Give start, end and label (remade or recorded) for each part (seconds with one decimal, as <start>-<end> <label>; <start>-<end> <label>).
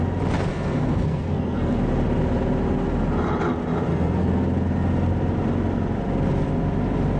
0.0-0.5 recorded; 0.5-1.8 remade; 1.8-3.9 recorded; 3.9-4.4 remade; 4.4-7.2 recorded